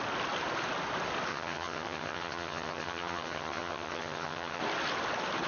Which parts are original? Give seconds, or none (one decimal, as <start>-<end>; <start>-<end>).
0.0-1.3; 4.6-5.5